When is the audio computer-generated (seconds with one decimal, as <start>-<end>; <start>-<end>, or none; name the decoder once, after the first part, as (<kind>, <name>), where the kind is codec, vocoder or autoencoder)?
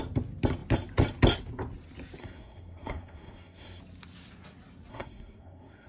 2.2-3.8 (codec, SNAC); 4.9-5.9